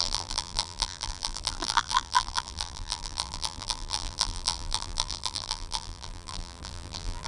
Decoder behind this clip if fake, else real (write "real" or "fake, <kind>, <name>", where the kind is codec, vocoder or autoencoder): fake, vocoder, BigVGAN v2